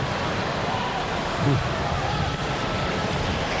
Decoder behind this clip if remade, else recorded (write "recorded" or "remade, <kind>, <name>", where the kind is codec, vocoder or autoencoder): recorded